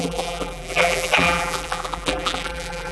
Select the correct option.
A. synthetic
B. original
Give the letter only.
A